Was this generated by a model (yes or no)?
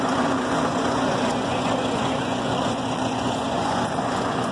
yes